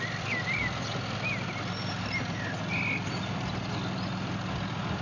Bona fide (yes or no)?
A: yes